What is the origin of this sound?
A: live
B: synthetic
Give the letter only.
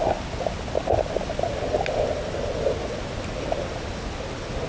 A